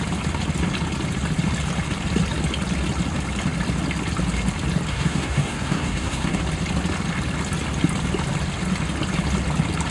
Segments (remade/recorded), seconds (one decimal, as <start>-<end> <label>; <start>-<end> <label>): 0.0-4.9 recorded; 4.9-6.4 remade; 6.4-9.9 recorded